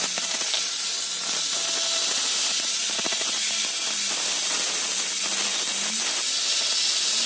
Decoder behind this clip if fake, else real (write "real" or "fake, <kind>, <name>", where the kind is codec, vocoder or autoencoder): real